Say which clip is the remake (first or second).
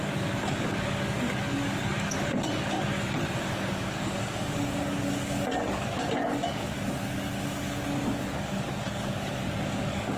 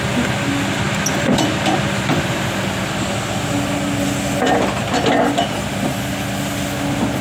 first